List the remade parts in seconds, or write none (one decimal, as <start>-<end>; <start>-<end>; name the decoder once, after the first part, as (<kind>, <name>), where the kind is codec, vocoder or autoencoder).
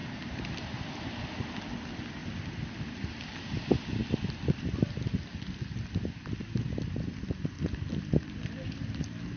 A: 0.0-1.2 (vocoder, BigVGAN v2); 7.9-9.4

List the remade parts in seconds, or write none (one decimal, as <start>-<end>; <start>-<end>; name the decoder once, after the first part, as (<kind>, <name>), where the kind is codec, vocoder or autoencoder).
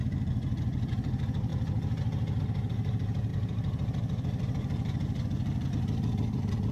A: 0.0-1.5 (vocoder, BigVGAN v2); 2.4-6.7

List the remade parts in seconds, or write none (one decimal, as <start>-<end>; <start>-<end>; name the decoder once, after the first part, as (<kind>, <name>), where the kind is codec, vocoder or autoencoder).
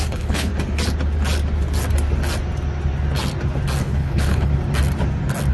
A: 0.0-0.5 (codec, HILCodec); 3.8-4.5